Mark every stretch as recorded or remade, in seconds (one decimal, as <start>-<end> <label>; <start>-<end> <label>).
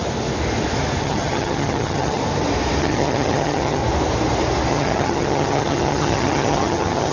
0.0-1.0 recorded; 1.0-2.2 remade; 2.2-2.8 recorded; 2.8-3.8 remade; 3.8-4.7 recorded; 4.7-7.1 remade